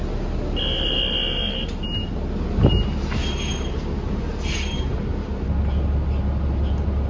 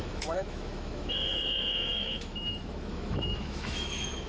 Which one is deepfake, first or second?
second